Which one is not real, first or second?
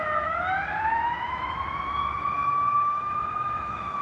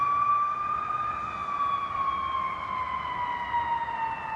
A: first